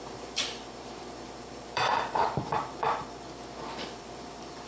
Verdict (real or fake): fake